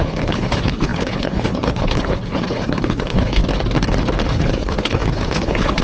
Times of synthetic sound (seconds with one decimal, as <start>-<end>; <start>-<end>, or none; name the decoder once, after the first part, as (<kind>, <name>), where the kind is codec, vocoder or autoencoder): 0.0-3.4 (codec, HILCodec); 4.3-5.8